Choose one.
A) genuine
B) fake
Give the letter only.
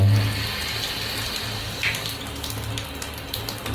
A